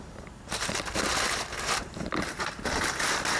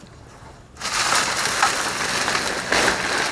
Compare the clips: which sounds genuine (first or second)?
second